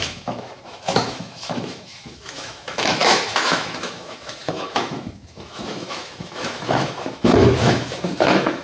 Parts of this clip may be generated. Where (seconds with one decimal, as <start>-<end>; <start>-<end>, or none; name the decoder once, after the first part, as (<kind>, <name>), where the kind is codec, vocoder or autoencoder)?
0.0-8.6 (autoencoder, DAC-VAE)